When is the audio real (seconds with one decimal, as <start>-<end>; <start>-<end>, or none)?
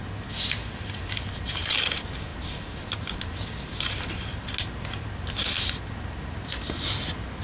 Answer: 0.0-7.4